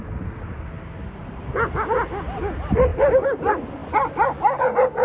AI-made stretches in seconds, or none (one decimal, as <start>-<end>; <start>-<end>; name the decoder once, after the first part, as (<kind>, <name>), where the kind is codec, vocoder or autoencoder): none